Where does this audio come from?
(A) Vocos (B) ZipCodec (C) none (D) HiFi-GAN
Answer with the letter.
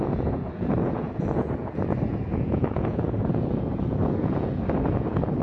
A